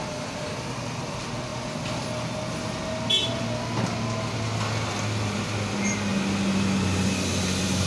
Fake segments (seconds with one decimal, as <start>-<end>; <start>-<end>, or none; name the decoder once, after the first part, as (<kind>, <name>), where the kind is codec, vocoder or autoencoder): none